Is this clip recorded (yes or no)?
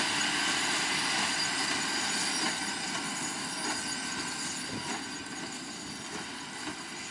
yes